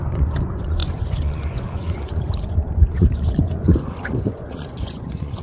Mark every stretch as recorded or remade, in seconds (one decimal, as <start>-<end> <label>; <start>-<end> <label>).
0.0-5.4 remade